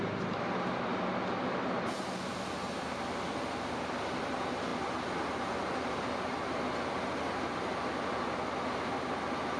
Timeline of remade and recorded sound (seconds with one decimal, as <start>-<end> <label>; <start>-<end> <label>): 0.0-9.6 recorded